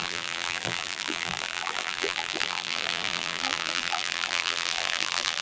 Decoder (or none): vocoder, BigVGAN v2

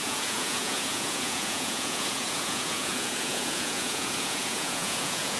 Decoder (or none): vocoder, Vocos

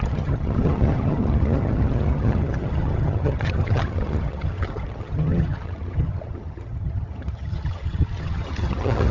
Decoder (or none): vocoder, HiFi-GAN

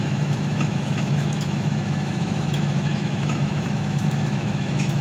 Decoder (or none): autoencoder, DAC-VAE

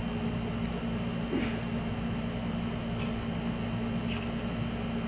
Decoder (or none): none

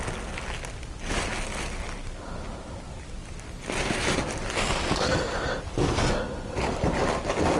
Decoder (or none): none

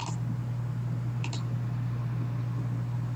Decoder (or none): none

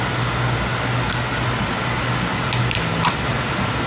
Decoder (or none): none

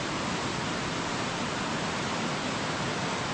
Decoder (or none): none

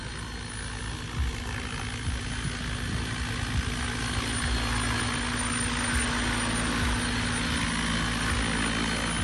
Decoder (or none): none